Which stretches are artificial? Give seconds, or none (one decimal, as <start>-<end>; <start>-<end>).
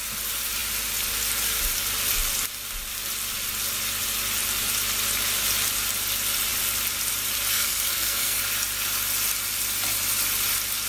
7.5-8.4